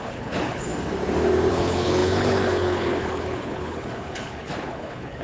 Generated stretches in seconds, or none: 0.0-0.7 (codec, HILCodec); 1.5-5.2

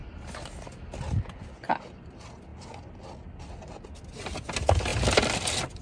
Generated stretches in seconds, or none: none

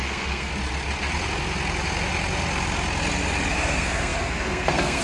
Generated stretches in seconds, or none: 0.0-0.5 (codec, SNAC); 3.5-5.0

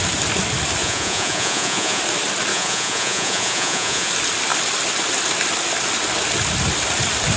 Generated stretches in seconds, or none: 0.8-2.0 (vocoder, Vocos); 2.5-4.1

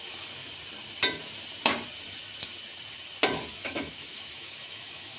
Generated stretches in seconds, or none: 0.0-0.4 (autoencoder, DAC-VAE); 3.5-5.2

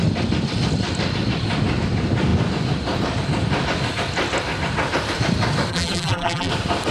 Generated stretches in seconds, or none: 5.7-6.5 (vocoder, BigVGAN v2)

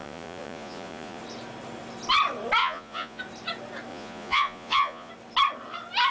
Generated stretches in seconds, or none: 0.0-1.2 (vocoder, Vocos); 2.6-3.2; 3.9-5.1

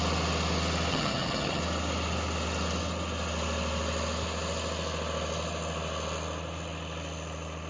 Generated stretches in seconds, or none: 0.9-1.6 (vocoder, HiFi-GAN)